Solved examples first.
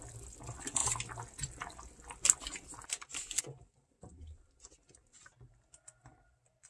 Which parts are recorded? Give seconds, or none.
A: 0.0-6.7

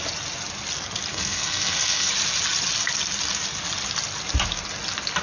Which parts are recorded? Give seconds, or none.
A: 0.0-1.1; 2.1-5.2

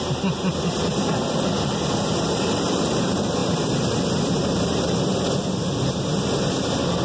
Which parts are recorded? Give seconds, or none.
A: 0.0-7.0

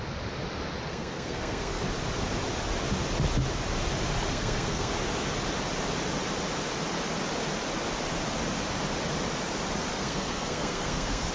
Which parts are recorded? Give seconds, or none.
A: 0.0-0.9; 1.8-4.3; 4.9-9.9